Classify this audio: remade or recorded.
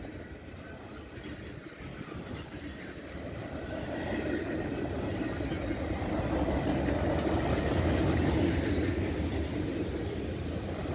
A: recorded